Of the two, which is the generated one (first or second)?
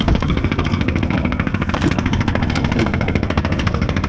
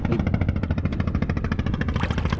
first